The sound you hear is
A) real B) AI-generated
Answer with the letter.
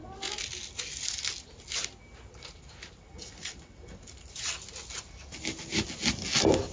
A